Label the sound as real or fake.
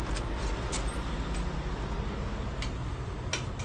real